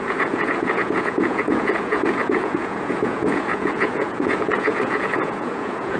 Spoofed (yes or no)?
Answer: yes